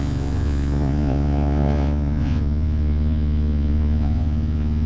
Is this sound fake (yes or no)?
yes